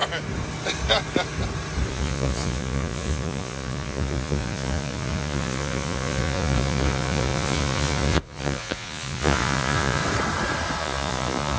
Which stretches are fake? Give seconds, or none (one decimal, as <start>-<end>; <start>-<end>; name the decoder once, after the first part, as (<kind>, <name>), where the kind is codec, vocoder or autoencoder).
1.9-10.0 (vocoder, Vocos); 10.8-11.6